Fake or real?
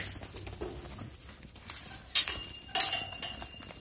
real